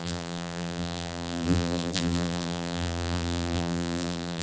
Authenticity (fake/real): fake